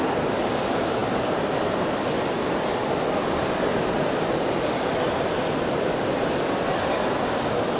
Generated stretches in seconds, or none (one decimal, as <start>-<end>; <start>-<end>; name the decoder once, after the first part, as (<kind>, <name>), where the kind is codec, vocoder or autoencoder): 3.2-6.9 (vocoder, BigVGAN v2)